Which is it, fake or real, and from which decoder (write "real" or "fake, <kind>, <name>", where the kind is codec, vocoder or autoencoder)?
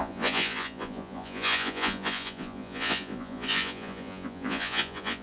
fake, vocoder, Vocos